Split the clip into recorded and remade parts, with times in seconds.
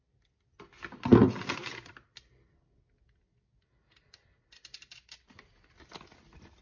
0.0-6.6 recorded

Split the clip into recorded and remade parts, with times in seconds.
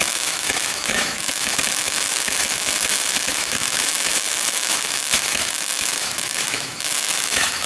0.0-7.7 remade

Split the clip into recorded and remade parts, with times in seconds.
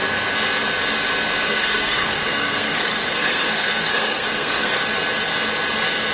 0.0-1.4 recorded; 1.4-4.8 remade; 4.8-6.1 recorded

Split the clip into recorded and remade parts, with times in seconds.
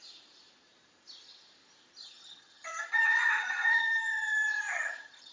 0.0-2.0 recorded; 2.0-5.3 remade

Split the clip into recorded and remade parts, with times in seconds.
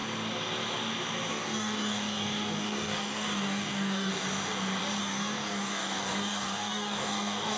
0.0-1.3 recorded; 1.3-4.1 remade; 4.1-5.0 recorded; 5.0-7.6 remade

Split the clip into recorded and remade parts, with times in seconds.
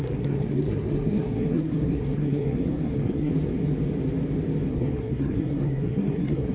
0.0-3.3 remade; 3.3-4.7 recorded; 4.7-6.5 remade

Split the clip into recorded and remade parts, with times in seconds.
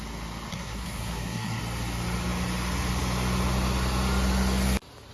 0.0-0.5 recorded; 0.5-1.6 remade; 1.6-5.1 recorded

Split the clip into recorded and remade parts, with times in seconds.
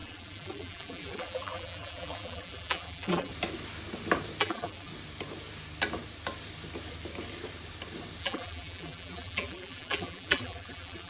0.0-3.3 remade; 3.3-4.4 recorded; 4.4-4.9 remade; 4.9-8.2 recorded; 8.2-11.1 remade